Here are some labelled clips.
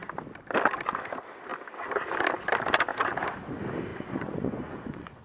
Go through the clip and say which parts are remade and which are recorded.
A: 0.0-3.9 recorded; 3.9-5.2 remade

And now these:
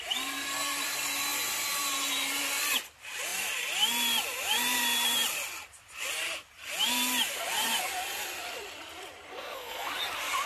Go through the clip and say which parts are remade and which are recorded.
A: 0.0-9.3 recorded; 9.3-9.9 remade; 9.9-10.5 recorded

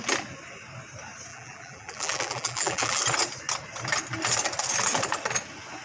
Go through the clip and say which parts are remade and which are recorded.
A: 0.0-1.3 recorded; 1.3-3.0 remade; 3.0-5.8 recorded

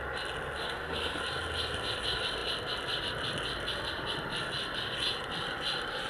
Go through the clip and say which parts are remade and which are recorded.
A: 0.0-0.6 recorded; 0.6-1.2 remade; 1.2-6.1 recorded

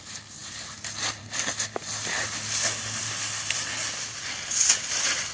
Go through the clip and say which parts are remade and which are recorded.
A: 0.0-5.3 recorded

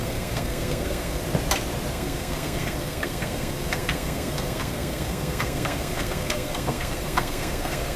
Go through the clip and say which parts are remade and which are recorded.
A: 0.0-1.2 remade; 1.2-1.9 recorded; 1.9-8.0 remade